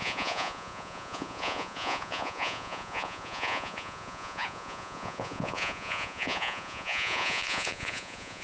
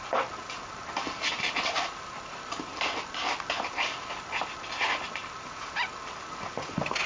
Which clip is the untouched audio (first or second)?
second